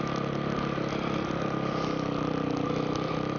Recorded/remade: recorded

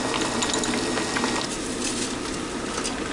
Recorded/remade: recorded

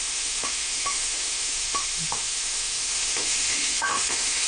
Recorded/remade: remade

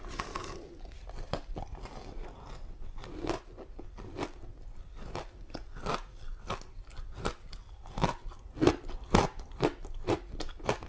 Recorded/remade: recorded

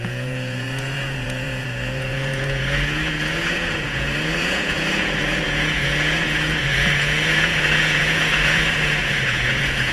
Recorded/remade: remade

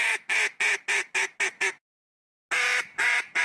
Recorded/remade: recorded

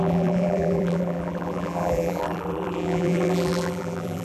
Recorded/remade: remade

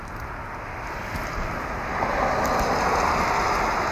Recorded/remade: recorded